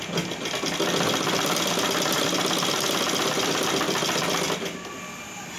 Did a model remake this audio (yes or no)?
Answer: no